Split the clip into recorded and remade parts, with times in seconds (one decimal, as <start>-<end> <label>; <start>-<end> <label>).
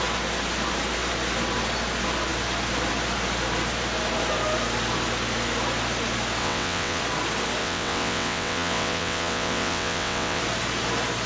0.0-6.4 recorded; 6.4-7.0 remade; 7.0-7.6 recorded; 7.6-10.4 remade; 10.4-11.3 recorded